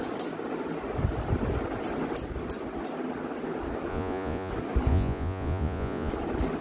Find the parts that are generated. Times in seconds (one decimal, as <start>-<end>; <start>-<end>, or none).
3.9-4.5; 4.9-6.1